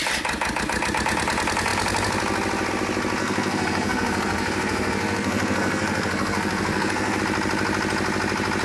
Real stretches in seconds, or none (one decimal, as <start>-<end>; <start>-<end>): 0.0-3.2; 7.2-8.6

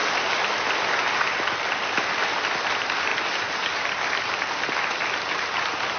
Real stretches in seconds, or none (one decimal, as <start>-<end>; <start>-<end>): 0.0-6.0

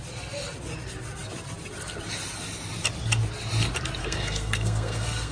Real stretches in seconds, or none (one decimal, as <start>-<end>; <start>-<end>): 0.0-4.0